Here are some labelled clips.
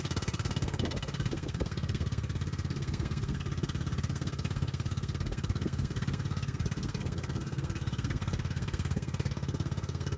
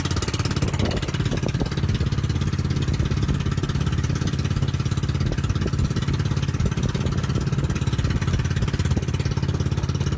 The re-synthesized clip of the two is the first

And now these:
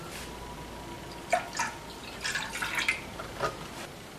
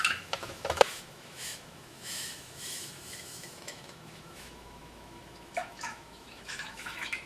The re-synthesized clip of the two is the second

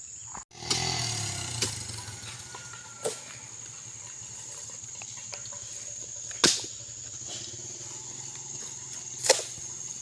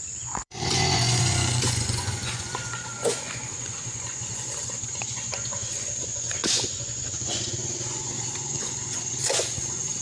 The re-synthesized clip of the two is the second